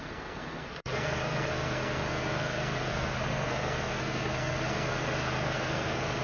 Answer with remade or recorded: remade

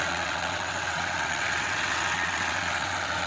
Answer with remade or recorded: remade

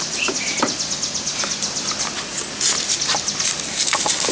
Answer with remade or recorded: recorded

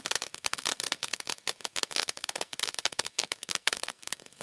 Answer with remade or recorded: remade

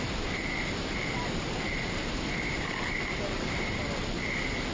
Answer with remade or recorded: recorded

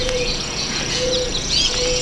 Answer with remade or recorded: remade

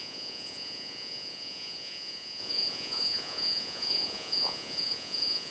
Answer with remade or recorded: remade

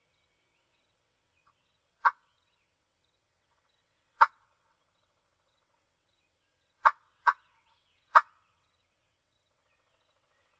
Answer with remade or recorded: remade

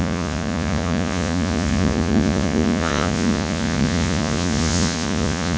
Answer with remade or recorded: remade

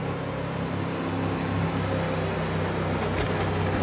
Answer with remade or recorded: recorded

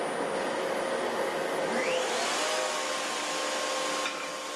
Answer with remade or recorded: recorded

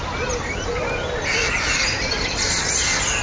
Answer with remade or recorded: recorded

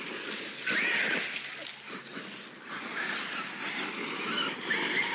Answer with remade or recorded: recorded